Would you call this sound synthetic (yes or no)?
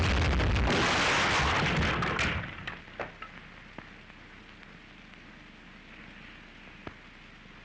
no